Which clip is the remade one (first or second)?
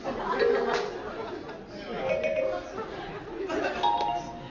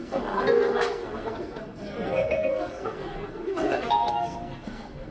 second